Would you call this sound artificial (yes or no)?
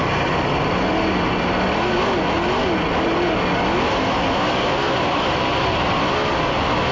no